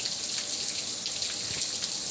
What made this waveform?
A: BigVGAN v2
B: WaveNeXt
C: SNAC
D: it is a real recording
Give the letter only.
D